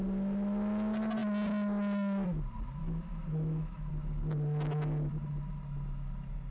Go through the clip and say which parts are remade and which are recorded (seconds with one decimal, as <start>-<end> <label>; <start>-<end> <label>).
0.0-2.8 recorded; 2.8-3.9 remade; 3.9-6.5 recorded